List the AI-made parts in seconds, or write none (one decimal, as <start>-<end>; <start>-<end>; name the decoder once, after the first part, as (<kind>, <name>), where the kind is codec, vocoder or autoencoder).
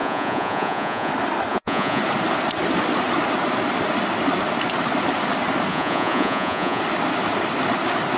0.0-1.1 (vocoder, Vocos); 1.5-2.0; 5.7-6.8